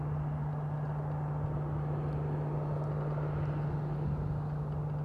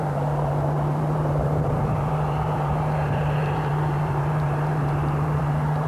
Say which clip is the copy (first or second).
second